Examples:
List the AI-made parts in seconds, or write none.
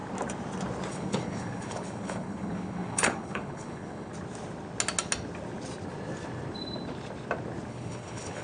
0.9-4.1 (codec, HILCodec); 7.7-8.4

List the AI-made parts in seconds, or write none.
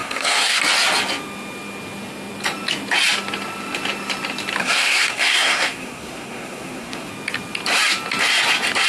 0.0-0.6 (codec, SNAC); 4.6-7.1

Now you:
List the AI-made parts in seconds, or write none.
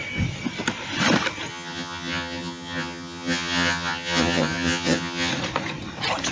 1.5-5.3 (vocoder, HiFi-GAN)